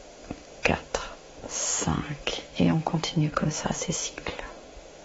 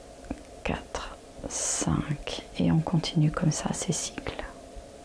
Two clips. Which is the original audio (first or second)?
second